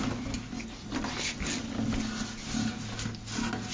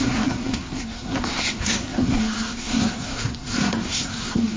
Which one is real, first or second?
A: first